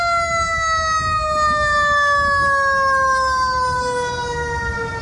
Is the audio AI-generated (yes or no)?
no